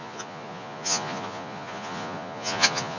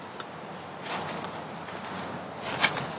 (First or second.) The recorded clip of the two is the second